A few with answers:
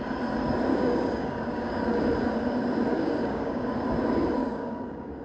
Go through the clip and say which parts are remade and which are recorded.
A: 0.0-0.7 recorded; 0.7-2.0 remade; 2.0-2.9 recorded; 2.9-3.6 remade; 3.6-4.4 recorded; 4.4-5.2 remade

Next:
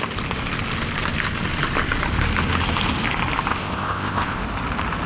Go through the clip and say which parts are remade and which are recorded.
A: 0.0-3.5 recorded; 3.5-4.4 remade; 4.4-5.1 recorded

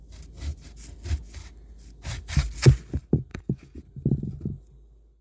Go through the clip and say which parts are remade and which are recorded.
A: 0.0-3.3 recorded; 3.3-3.8 remade; 3.8-5.2 recorded

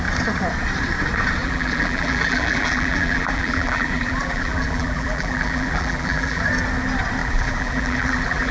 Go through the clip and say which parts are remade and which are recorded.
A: 0.0-1.4 recorded; 1.4-6.4 remade; 6.4-7.2 recorded; 7.2-8.5 remade

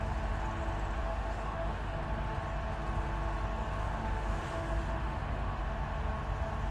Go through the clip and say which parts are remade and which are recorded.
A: 0.0-1.0 recorded; 1.0-2.0 remade; 2.0-3.8 recorded; 3.8-5.6 remade; 5.6-6.7 recorded